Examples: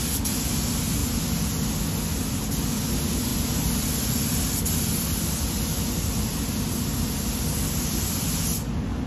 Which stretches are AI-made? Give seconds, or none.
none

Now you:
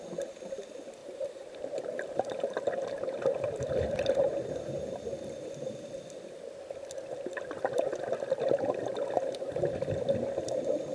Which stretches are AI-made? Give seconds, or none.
1.0-5.5 (vocoder, BigVGAN v2)

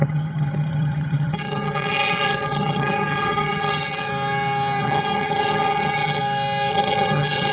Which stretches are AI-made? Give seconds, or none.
0.0-4.1 (vocoder, HiFi-GAN); 4.8-6.2; 6.7-7.5

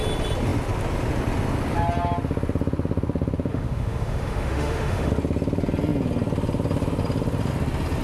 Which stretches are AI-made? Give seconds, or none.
3.5-5.1 (autoencoder, DAC-VAE)

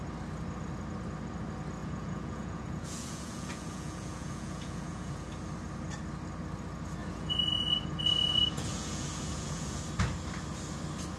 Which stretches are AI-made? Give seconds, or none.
1.8-5.3 (vocoder, Vocos); 7.0-9.8